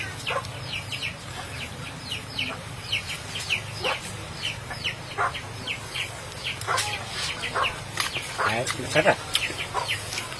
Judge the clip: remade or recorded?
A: recorded